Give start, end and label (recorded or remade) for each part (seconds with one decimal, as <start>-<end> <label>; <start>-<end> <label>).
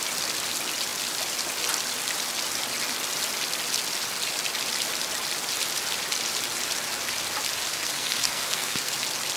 0.0-7.7 recorded; 7.7-8.9 remade; 8.9-9.4 recorded